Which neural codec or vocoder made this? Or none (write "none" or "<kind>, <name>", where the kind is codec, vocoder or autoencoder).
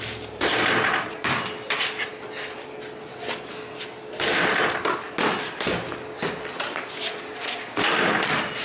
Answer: none